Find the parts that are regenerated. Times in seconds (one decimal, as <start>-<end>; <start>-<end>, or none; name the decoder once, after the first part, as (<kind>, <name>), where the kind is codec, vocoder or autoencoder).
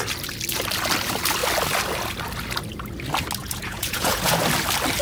3.4-4.4 (vocoder, Vocos)